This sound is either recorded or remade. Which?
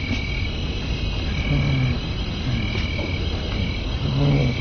recorded